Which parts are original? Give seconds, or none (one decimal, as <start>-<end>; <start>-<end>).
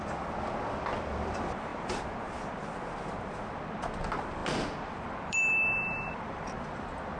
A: 1.7-3.0